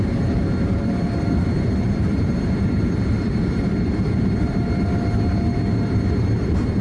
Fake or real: fake